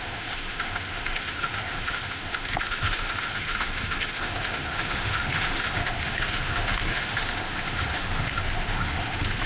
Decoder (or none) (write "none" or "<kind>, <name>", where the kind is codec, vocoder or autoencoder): autoencoder, DAC-VAE